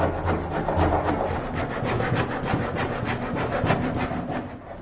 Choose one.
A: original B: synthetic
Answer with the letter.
A